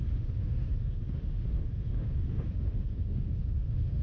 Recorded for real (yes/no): no